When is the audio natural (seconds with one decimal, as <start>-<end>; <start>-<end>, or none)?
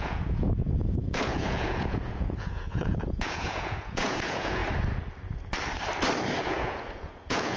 4.6-6.4